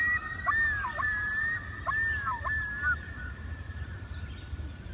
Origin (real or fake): real